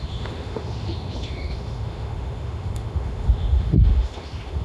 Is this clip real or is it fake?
fake